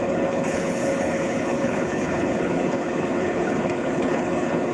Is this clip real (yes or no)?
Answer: no